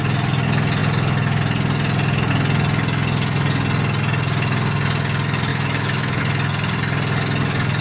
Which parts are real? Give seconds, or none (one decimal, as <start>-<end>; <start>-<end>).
0.0-5.5; 6.2-7.8